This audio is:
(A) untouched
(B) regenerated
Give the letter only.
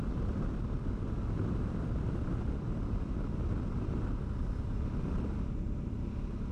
A